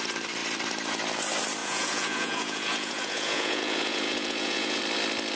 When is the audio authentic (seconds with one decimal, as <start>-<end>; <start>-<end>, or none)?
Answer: 0.0-1.6; 4.8-5.4

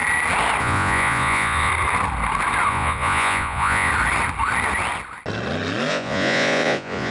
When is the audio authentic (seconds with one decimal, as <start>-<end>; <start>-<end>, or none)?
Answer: 0.0-0.6; 1.7-2.7; 3.9-5.9

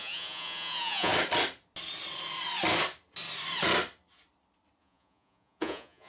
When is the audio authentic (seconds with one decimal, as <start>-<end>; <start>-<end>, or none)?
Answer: 1.1-4.8

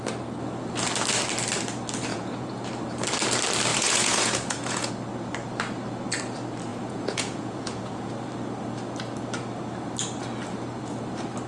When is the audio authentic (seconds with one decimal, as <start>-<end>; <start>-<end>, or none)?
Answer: 0.0-2.1; 2.7-3.7; 4.9-6.7; 8.1-11.5